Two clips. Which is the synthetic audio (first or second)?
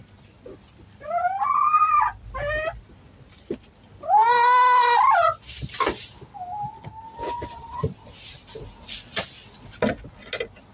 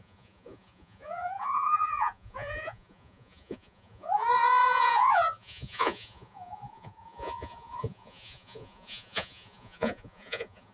second